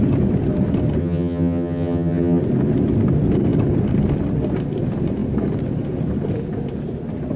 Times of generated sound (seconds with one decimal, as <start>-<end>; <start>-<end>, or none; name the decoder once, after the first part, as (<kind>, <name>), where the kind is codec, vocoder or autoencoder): 1.0-2.4 (vocoder, HiFi-GAN)